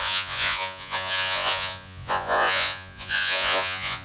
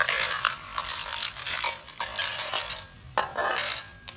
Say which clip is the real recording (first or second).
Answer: second